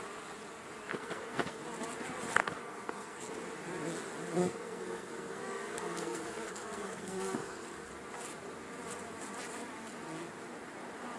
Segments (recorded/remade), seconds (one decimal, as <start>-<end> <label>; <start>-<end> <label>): 0.0-0.9 recorded; 0.9-1.6 remade; 1.6-2.4 recorded; 2.4-3.3 remade; 3.3-4.4 recorded; 4.4-7.9 remade; 7.9-11.2 recorded